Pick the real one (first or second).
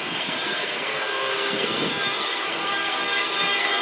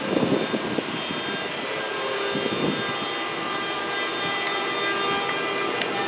second